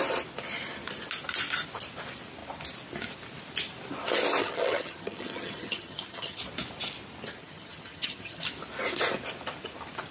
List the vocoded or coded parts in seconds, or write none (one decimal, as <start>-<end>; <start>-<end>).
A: 4.4-6.4; 7.4-8.4